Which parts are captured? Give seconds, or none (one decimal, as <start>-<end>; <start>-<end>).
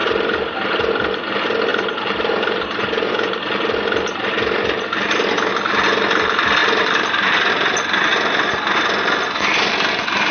0.9-1.7; 3.1-6.6; 7.5-10.3